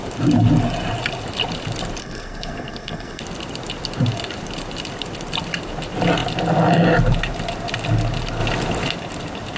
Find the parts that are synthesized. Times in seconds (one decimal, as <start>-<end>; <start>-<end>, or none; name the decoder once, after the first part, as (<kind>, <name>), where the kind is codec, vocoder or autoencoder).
2.0-3.2 (codec, SNAC)